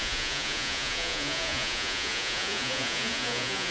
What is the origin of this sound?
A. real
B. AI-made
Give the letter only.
B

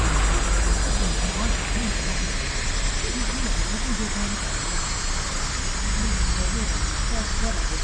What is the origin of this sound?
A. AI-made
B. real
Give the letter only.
B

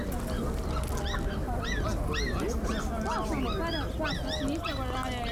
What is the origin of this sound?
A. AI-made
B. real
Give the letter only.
B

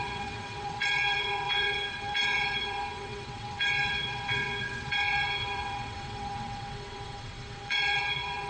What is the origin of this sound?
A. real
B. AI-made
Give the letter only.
B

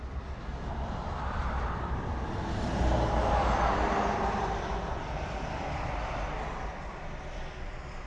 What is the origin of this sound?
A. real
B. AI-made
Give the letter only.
B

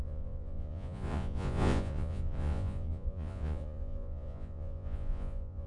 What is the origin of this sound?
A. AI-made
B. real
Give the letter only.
A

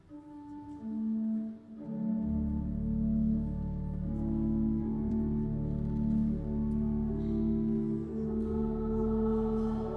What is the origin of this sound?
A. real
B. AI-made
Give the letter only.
A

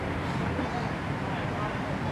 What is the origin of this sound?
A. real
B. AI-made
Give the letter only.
A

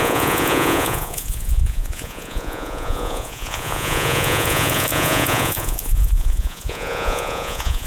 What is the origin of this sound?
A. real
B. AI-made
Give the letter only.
B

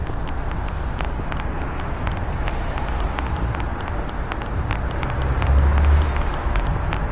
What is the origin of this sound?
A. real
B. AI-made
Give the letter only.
A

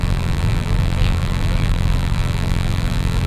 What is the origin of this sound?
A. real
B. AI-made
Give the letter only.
B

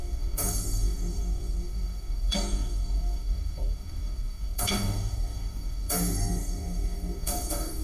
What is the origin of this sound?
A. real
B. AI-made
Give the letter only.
B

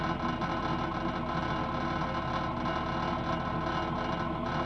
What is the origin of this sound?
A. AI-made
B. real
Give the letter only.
B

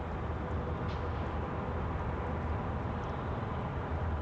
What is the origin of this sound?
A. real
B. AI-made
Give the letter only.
A